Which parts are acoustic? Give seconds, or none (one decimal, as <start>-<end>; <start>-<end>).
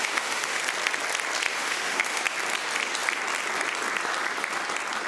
0.6-1.5; 2.2-5.1